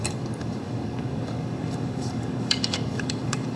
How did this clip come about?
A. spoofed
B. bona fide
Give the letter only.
A